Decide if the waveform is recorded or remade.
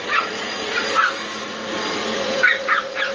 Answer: remade